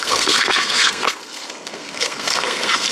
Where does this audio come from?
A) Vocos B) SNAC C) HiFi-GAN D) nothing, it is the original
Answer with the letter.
B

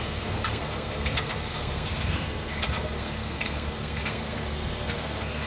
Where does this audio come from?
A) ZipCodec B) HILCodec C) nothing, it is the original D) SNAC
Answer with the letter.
D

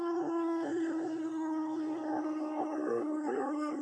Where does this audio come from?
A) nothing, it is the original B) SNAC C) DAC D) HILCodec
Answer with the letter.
B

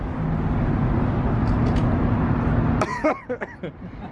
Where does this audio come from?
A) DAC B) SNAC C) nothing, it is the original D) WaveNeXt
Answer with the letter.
C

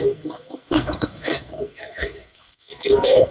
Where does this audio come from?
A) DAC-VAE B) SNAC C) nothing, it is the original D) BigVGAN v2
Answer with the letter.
B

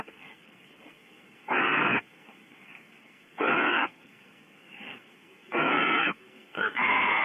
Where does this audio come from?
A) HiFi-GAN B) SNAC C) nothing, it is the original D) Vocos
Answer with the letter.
B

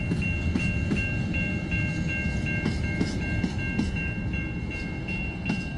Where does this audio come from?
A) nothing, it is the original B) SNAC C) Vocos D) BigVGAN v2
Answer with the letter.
A